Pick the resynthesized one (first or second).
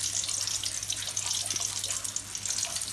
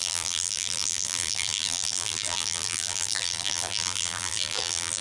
second